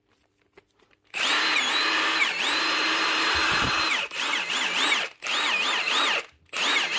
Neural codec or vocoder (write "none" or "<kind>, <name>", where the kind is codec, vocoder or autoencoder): vocoder, BigVGAN v2